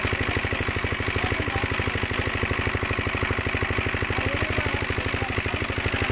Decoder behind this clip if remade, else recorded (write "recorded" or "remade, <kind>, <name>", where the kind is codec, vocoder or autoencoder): recorded